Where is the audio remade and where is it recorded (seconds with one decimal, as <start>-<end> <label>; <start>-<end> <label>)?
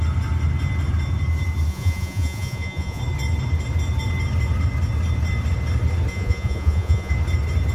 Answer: 0.0-1.7 recorded; 1.7-3.0 remade; 3.0-6.1 recorded; 6.1-7.1 remade; 7.1-7.7 recorded